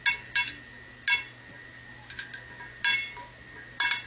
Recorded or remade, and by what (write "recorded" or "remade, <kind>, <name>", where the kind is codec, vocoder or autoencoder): recorded